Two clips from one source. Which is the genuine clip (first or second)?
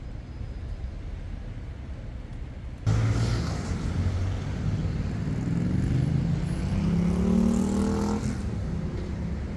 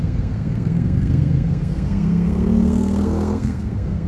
first